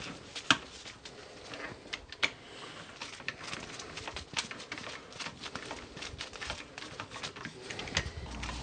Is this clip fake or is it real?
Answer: real